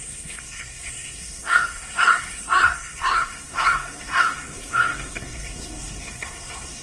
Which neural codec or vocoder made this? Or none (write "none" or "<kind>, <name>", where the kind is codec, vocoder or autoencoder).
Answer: codec, SNAC